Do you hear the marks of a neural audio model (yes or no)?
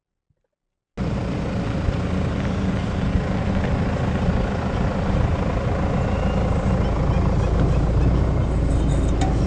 no